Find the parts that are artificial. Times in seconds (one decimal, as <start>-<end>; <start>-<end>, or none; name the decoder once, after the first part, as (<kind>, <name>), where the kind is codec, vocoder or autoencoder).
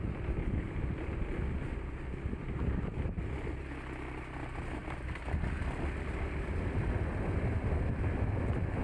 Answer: none